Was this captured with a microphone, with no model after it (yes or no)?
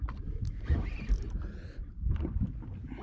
yes